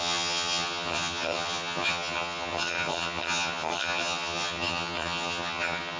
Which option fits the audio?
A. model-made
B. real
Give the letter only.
A